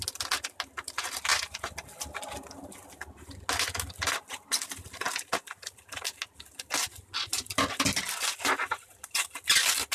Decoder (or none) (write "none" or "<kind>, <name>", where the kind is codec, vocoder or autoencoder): none